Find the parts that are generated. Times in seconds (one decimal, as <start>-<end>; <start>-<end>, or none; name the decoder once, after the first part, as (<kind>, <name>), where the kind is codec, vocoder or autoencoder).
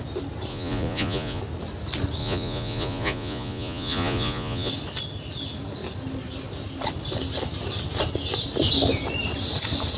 0.5-1.4 (vocoder, Vocos); 2.2-4.7